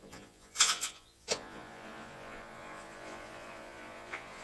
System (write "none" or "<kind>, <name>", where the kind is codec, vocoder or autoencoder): vocoder, Vocos